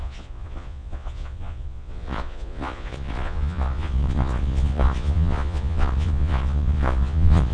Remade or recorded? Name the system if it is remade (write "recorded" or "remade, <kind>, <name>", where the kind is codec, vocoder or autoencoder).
remade, vocoder, Vocos